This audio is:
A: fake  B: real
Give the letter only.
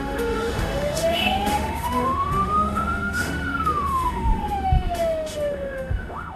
A